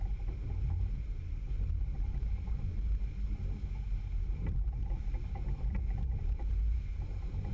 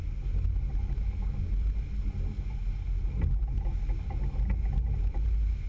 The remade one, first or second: first